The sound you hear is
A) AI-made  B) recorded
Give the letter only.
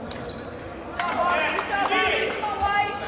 B